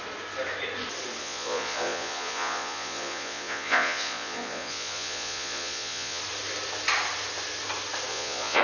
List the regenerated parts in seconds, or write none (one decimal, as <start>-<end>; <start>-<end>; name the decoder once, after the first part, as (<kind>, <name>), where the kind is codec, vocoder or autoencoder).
1.2-6.2 (vocoder, Vocos); 8.1-8.6